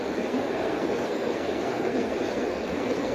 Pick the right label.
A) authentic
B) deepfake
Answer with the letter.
B